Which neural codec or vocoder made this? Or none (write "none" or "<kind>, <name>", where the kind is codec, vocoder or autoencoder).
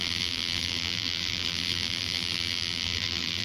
vocoder, BigVGAN v2